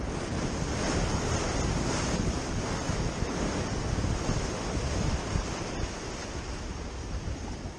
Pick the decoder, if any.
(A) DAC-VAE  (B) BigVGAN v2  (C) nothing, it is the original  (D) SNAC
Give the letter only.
C